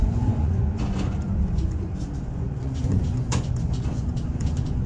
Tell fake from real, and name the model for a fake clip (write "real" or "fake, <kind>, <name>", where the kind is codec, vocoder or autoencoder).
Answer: fake, vocoder, Vocos